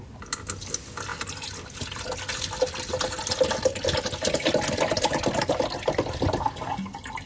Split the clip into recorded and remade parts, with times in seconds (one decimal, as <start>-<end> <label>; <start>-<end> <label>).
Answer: 0.0-7.3 recorded